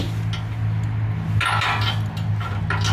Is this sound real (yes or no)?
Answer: yes